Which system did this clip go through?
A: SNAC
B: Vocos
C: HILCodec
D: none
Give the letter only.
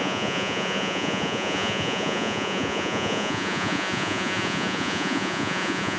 B